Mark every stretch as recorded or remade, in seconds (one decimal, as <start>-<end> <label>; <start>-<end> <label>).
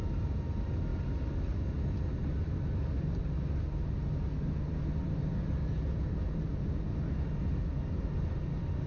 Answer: 0.0-8.9 recorded